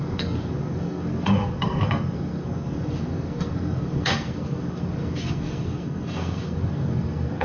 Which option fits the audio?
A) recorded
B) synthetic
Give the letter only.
B